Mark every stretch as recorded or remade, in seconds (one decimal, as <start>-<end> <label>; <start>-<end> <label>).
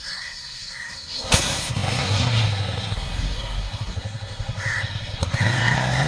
0.0-6.1 remade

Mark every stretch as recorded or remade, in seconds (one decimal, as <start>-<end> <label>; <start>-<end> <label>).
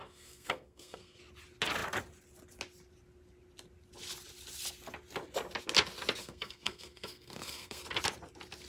0.0-1.2 remade; 1.2-6.2 recorded; 6.2-7.8 remade; 7.8-8.7 recorded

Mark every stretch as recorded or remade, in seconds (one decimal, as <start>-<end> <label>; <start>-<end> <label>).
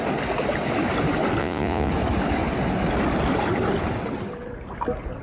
0.0-1.4 recorded; 1.4-1.9 remade; 1.9-5.2 recorded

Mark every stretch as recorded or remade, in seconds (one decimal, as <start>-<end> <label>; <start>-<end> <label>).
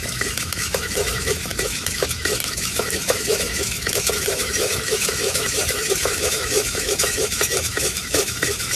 0.0-8.7 remade